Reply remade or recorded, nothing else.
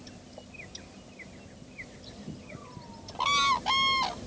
recorded